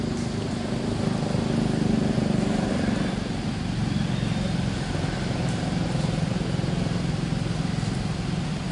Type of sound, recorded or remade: recorded